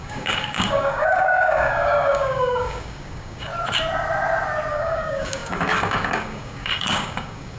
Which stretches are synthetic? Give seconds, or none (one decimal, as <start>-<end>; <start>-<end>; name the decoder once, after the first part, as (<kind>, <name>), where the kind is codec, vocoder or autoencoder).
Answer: 0.0-3.5 (codec, DAC); 4.7-7.6